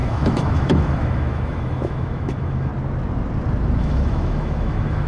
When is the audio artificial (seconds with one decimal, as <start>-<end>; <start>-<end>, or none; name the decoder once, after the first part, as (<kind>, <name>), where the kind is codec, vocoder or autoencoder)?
0.0-2.7 (autoencoder, DAC-VAE); 3.8-5.1